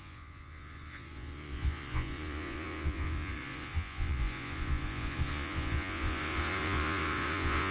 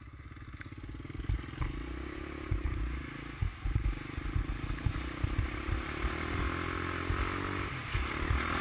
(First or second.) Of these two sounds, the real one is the second